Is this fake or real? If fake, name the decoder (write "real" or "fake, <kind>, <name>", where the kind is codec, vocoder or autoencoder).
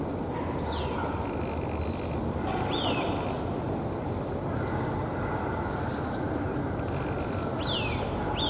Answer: real